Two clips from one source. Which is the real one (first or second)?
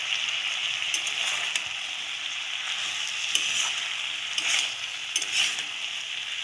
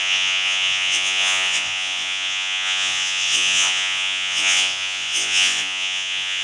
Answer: first